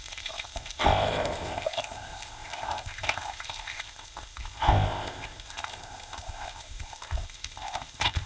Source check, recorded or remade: remade